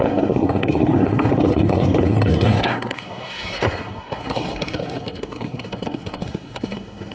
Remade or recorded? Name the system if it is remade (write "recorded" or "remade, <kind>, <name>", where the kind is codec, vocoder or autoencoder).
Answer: remade, codec, SNAC